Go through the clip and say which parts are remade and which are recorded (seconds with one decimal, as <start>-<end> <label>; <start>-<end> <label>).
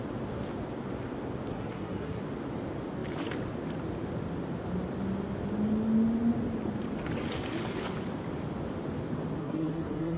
0.0-1.5 recorded; 1.5-2.2 remade; 2.2-9.4 recorded; 9.4-10.2 remade